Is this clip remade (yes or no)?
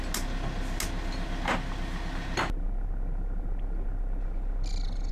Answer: no